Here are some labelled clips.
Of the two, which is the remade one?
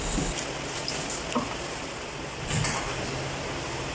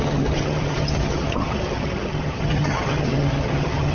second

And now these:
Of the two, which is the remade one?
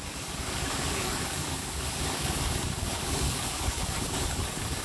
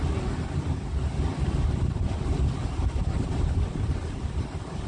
first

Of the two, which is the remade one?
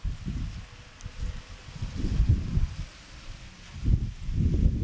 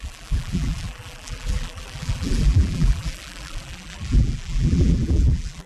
second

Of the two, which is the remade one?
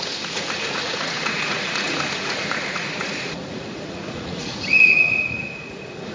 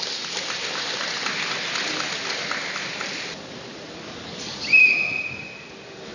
first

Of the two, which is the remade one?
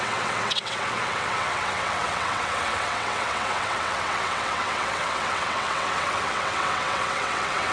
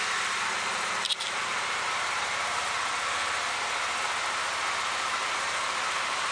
first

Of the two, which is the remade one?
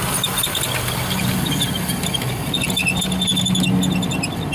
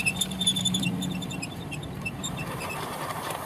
second